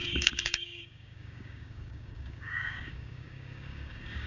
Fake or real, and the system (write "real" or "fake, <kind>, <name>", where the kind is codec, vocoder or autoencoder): fake, codec, DAC